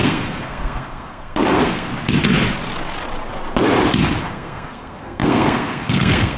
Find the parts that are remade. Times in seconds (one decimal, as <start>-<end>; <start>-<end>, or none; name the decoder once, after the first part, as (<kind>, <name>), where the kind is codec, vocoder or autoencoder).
0.0-1.9 (codec, SNAC); 4.3-6.4